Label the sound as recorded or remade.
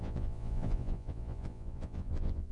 remade